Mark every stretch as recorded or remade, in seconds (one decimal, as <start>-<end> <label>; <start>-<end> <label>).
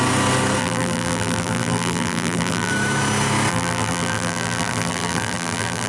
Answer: 0.0-0.6 recorded; 0.6-2.7 remade; 2.7-3.5 recorded; 3.5-5.9 remade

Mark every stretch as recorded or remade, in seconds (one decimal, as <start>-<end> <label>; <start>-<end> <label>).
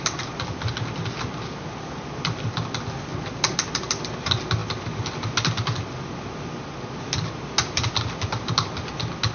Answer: 0.0-9.3 recorded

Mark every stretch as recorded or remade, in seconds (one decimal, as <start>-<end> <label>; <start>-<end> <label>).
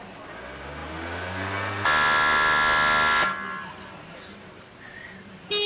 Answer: 0.0-5.7 recorded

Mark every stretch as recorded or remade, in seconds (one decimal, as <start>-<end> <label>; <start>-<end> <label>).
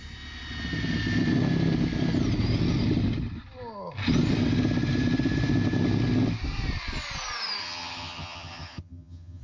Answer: 0.0-7.6 recorded; 7.6-9.4 remade